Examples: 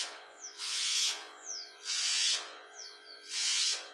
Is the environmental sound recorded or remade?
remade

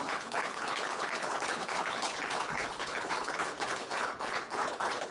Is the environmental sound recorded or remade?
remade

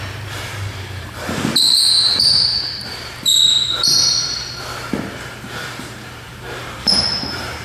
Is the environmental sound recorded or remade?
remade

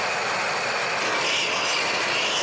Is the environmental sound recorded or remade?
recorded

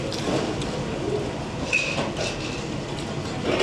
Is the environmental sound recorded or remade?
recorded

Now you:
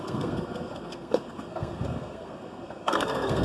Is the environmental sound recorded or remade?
remade